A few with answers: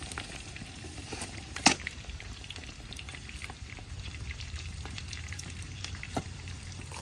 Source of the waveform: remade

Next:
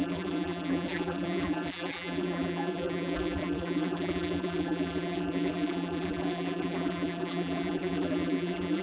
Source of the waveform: remade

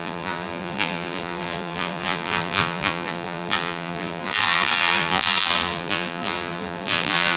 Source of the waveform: remade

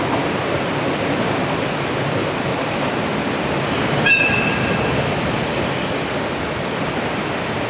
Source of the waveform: remade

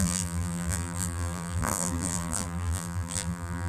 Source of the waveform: remade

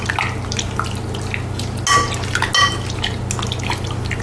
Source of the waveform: recorded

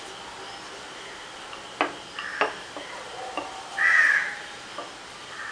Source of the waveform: recorded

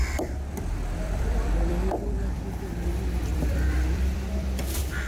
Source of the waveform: remade